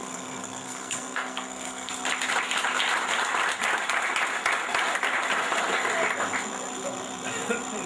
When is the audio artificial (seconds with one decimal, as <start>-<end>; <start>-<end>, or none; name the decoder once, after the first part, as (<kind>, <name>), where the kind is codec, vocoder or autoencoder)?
0.0-1.9 (codec, SNAC)